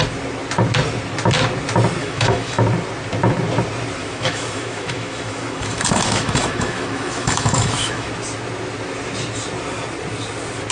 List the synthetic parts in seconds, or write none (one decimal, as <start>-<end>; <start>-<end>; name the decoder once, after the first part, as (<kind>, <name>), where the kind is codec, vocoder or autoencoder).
2.0-2.6 (autoencoder, DAC-VAE); 4.0-8.1